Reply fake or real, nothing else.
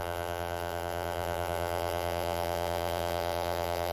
fake